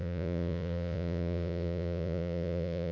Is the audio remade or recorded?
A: remade